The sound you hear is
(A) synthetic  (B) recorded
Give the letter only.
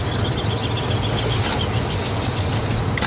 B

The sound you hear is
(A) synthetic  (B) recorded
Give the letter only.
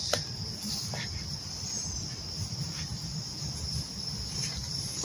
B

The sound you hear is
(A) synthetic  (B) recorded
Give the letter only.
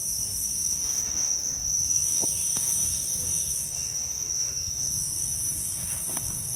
A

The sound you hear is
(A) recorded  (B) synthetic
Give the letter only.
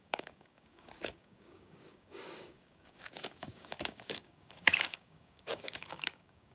B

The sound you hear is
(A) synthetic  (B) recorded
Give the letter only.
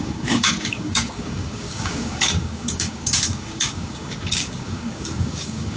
A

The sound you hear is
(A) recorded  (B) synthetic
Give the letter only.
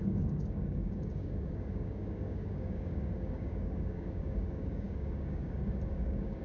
B